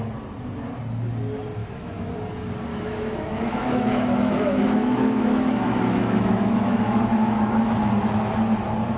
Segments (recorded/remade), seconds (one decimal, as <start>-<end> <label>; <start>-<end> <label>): 0.0-1.6 recorded; 1.6-2.1 remade; 2.1-2.7 recorded; 2.7-7.9 remade; 7.9-9.0 recorded